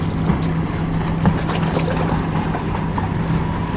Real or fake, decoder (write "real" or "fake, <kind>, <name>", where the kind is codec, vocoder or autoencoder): real